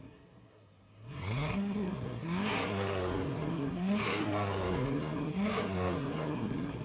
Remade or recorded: remade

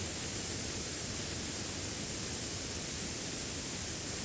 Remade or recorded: recorded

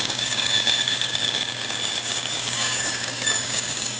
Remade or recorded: remade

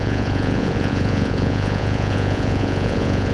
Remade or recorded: remade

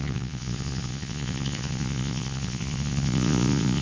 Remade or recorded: remade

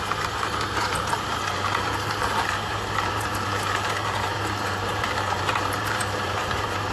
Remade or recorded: remade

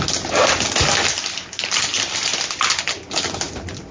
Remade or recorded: recorded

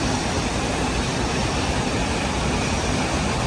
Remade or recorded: remade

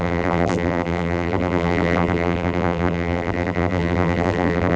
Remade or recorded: remade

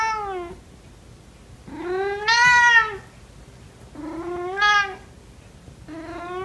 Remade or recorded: recorded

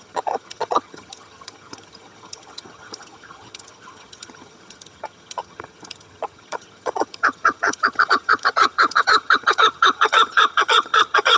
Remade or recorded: remade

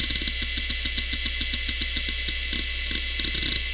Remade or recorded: recorded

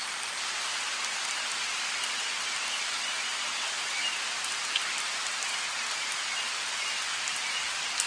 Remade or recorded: recorded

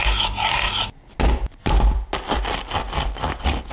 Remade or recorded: recorded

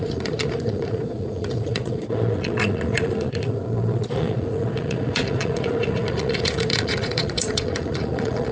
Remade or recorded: remade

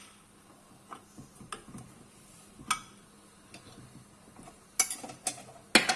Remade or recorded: recorded